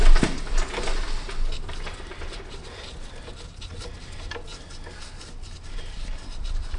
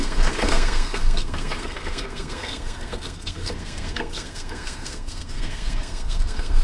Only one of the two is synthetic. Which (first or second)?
second